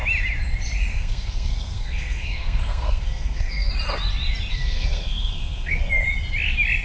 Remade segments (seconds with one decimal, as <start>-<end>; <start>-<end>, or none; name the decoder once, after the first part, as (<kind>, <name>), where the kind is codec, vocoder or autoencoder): 0.9-3.7 (codec, SNAC); 4.5-5.8